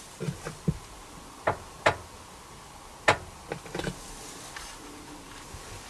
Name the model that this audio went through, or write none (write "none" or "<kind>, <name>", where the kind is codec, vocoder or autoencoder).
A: none